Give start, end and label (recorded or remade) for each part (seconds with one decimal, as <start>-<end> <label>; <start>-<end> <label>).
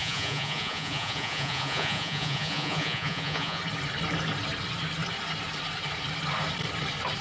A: 0.0-3.6 remade; 3.6-7.2 recorded